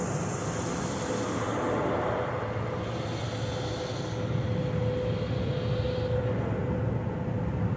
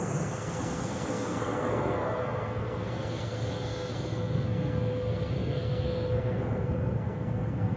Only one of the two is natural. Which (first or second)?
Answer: first